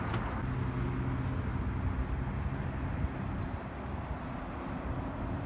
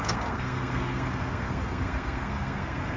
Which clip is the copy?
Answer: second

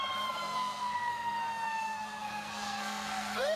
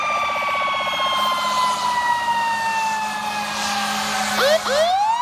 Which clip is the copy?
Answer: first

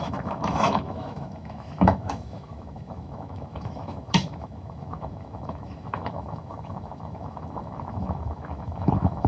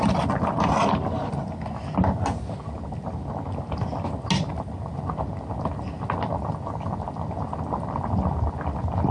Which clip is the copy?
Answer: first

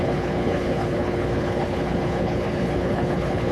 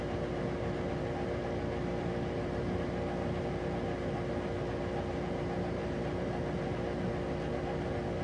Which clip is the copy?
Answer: first